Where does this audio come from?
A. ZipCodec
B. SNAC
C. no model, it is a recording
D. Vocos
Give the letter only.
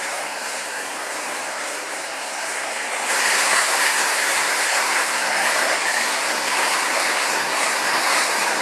B